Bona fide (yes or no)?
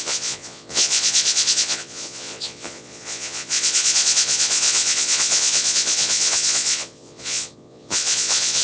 no